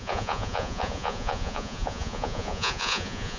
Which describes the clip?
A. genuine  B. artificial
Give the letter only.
B